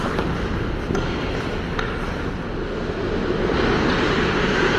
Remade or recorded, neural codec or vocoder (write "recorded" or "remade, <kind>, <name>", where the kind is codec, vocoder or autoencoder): recorded